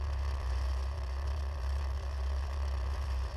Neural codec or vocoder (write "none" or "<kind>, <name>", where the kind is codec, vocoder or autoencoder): vocoder, BigVGAN v2